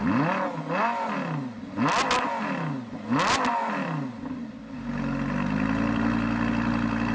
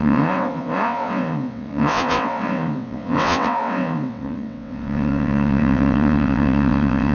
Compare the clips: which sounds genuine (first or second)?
first